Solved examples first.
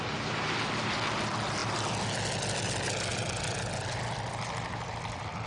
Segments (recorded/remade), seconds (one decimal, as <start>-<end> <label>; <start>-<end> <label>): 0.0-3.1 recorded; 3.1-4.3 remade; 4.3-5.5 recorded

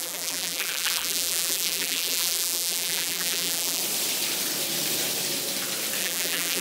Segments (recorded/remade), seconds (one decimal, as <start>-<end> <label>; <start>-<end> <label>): 0.0-3.8 remade; 3.8-6.0 recorded; 6.0-6.6 remade

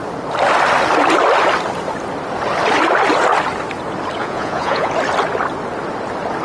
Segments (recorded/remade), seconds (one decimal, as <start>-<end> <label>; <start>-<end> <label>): 0.0-4.2 recorded; 4.2-4.9 remade; 4.9-6.4 recorded

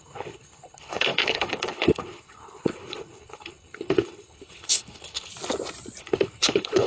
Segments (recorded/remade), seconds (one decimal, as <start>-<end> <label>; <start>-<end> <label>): 0.0-5.3 remade; 5.3-6.0 recorded; 6.0-6.9 remade

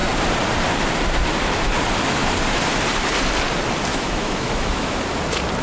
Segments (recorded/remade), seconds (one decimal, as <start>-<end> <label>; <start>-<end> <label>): 0.0-3.9 recorded; 3.9-5.0 remade; 5.0-5.6 recorded